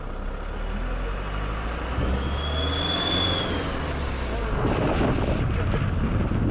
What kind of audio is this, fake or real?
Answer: real